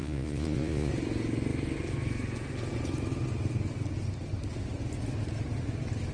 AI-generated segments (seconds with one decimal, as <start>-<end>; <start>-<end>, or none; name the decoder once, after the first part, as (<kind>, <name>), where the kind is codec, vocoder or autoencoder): 0.0-0.9 (vocoder, Vocos)